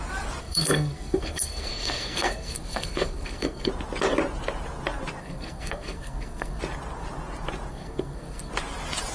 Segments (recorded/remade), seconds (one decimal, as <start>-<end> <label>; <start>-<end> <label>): 0.0-0.4 recorded; 0.4-3.7 remade; 3.7-5.2 recorded; 5.2-6.6 remade; 6.6-7.7 recorded; 7.7-8.5 remade; 8.5-9.1 recorded